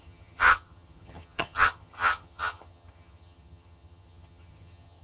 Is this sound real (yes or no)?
no